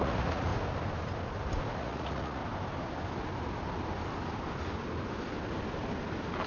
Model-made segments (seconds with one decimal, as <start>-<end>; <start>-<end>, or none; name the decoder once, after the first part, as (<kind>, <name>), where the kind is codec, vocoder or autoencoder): 0.0-0.5 (vocoder, Vocos); 1.8-2.4